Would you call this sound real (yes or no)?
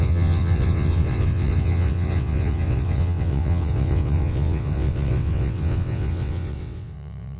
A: no